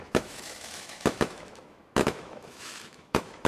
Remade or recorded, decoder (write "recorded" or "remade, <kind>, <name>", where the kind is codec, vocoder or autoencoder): remade, autoencoder, DAC-VAE